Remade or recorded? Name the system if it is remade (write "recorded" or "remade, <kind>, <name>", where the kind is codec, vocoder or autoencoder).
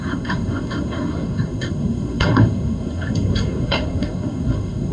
remade, codec, SNAC